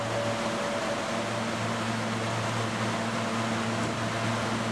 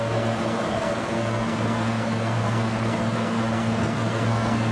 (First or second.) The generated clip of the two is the second